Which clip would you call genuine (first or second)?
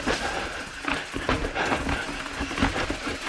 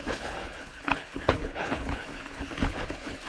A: first